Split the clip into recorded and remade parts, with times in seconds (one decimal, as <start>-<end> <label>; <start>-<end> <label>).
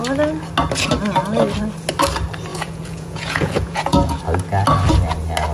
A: 0.0-2.5 recorded; 2.5-4.2 remade; 4.2-5.5 recorded